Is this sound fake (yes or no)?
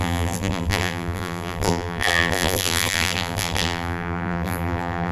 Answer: yes